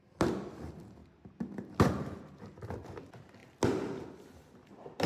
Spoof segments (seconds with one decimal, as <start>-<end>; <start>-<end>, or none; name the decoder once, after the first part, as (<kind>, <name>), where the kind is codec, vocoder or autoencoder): none